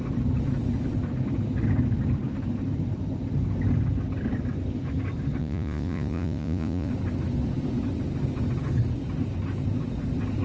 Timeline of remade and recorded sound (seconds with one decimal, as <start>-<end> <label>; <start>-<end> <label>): 0.0-5.4 recorded; 5.4-6.9 remade; 6.9-10.4 recorded